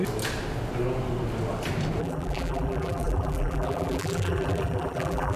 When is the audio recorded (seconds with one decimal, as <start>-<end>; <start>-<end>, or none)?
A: 0.0-2.0